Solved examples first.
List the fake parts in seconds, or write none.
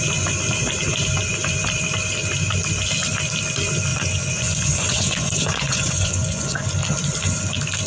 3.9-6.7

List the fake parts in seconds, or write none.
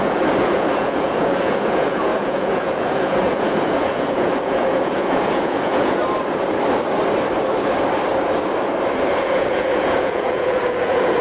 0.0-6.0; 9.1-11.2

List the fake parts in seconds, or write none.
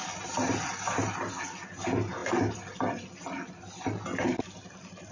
none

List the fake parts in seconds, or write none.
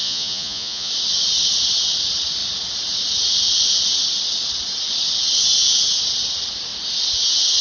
0.0-0.9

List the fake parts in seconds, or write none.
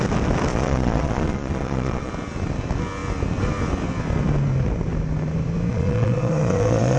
0.5-2.1; 5.7-7.0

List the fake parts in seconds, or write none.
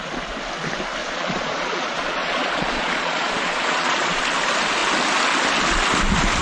1.0-4.2